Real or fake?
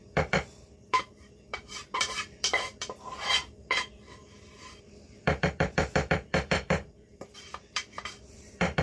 fake